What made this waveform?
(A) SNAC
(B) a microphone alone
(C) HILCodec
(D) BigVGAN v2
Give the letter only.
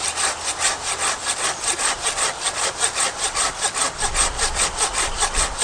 B